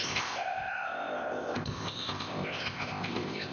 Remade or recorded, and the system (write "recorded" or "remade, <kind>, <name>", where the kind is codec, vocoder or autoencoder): remade, codec, ZipCodec